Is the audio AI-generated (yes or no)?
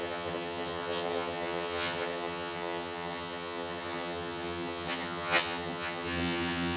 yes